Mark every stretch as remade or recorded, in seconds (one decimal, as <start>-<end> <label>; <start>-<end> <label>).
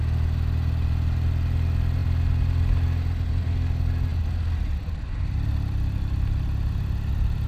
0.0-7.5 recorded